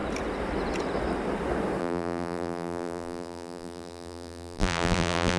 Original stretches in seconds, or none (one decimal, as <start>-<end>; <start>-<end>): 0.0-1.8